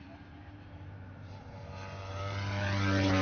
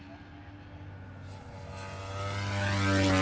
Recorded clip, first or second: second